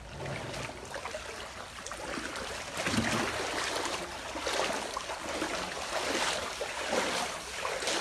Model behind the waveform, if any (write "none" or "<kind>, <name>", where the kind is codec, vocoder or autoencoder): none